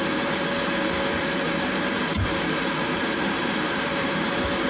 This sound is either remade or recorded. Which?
remade